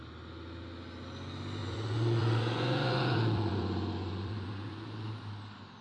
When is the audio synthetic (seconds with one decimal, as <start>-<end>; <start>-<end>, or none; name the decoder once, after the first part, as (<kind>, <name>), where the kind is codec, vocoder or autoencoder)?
1.6-5.1 (vocoder, Vocos)